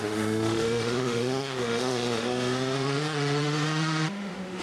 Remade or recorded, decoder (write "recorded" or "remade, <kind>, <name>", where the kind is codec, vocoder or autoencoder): remade, autoencoder, DAC-VAE